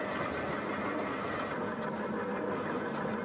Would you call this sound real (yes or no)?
yes